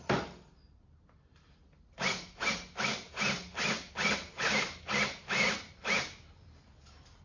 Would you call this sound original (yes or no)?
yes